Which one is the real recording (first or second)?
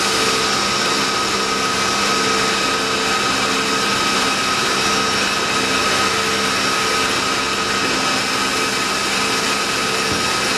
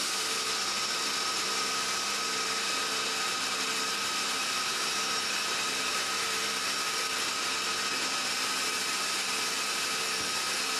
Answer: first